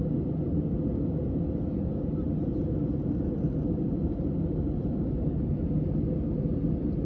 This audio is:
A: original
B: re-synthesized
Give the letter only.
A